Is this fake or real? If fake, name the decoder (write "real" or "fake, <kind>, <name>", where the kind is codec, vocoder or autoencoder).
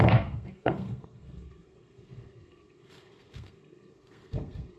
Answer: fake, codec, SNAC